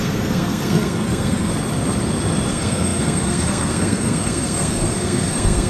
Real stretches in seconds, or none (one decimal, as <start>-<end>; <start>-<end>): 1.5-2.5

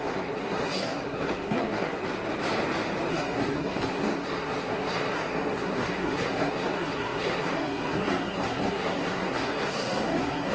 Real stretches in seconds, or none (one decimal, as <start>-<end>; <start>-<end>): 2.0-3.1

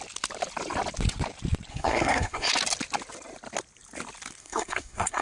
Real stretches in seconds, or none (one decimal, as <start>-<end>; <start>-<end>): 0.0-1.7; 2.5-4.4

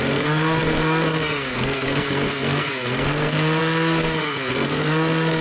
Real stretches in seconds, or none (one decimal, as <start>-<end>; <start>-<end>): none

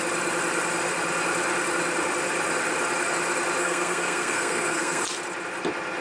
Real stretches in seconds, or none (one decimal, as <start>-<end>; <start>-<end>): 0.0-3.6; 5.0-6.0

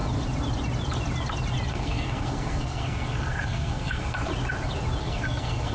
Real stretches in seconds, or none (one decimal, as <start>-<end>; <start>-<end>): 0.0-1.7; 4.3-5.0

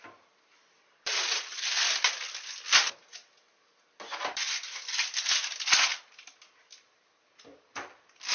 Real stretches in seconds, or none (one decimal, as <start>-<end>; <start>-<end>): 0.0-8.3

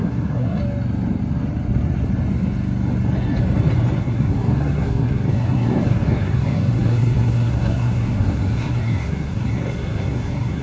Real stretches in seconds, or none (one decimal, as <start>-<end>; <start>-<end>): 0.6-4.0